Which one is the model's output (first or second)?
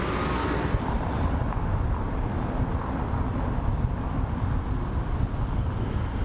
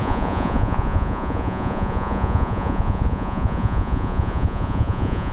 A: second